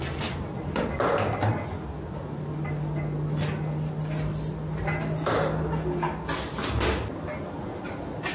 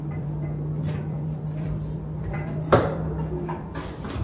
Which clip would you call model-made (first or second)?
second